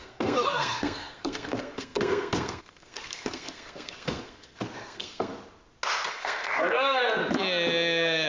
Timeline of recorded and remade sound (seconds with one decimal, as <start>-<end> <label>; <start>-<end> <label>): 0.0-5.3 remade; 5.3-6.1 recorded; 6.1-7.2 remade; 7.2-8.3 recorded